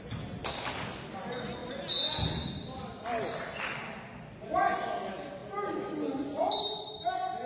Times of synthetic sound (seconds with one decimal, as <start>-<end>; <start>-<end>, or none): none